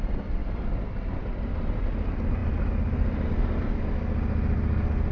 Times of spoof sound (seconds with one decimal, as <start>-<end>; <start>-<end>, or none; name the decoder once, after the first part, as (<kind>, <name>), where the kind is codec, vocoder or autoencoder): none